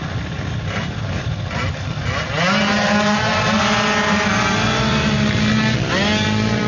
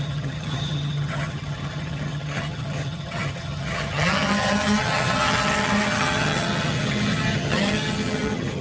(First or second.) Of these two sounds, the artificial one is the second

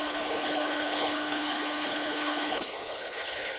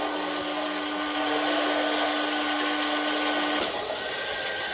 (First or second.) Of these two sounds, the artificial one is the first